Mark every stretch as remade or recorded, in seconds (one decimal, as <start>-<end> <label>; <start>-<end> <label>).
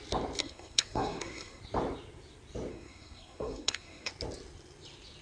0.0-0.4 recorded; 0.4-1.6 remade; 1.6-2.7 recorded; 2.7-4.1 remade; 4.1-5.2 recorded